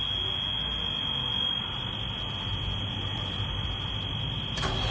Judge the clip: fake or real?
real